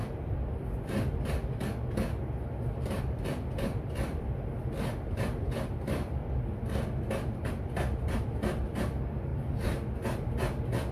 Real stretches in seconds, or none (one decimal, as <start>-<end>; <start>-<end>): 0.0-3.0; 6.2-7.5; 9.3-10.9